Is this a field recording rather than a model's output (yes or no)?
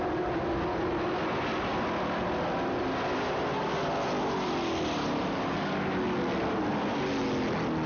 yes